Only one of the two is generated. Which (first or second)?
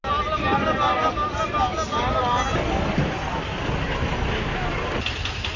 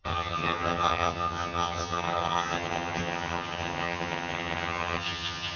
second